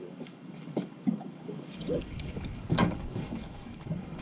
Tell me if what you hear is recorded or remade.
remade